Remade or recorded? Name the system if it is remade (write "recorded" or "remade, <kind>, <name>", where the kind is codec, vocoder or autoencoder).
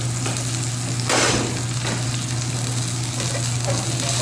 recorded